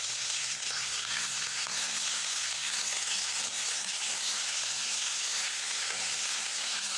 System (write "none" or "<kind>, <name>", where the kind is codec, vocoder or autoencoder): codec, SNAC